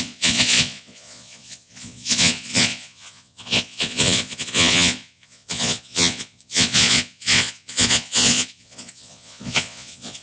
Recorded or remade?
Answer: remade